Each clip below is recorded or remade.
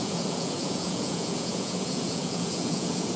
remade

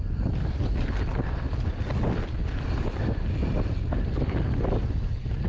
recorded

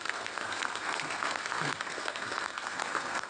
remade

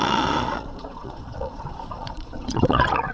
remade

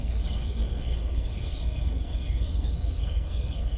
remade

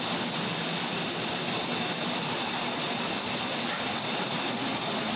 recorded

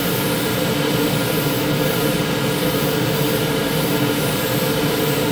recorded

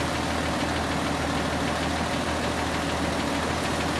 recorded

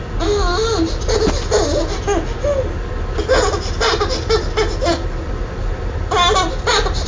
recorded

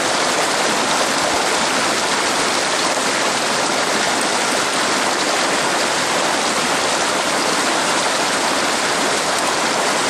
recorded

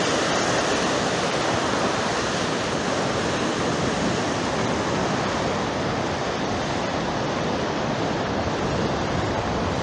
recorded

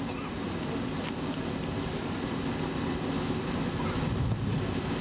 recorded